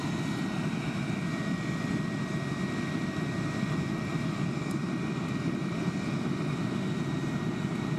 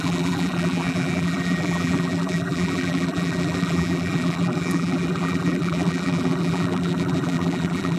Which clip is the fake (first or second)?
second